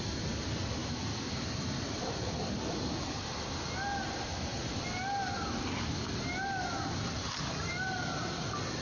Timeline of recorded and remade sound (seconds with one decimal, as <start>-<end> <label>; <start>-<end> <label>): 0.0-0.8 recorded; 0.8-2.5 remade; 2.5-7.2 recorded; 7.2-8.3 remade; 8.3-8.8 recorded